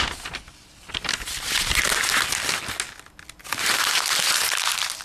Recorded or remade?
recorded